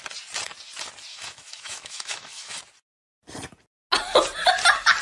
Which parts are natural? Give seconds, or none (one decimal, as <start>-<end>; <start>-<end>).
0.0-1.1; 2.6-5.0